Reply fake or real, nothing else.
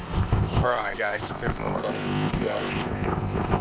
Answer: fake